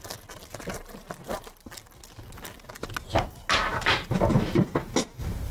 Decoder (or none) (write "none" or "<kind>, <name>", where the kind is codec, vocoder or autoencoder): none